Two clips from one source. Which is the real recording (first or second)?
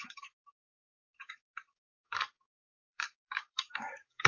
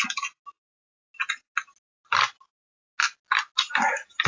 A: second